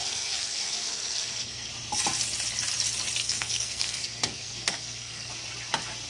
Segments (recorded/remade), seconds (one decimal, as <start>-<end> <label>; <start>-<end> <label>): 0.0-1.7 remade; 1.7-3.2 recorded; 3.2-5.3 remade; 5.3-6.1 recorded